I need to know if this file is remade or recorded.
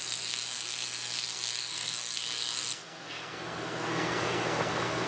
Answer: remade